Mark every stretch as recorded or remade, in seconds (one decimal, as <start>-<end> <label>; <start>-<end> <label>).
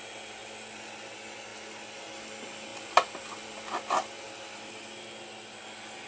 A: 0.0-1.5 recorded; 1.5-2.0 remade; 2.0-2.7 recorded; 2.7-4.2 remade; 4.2-6.1 recorded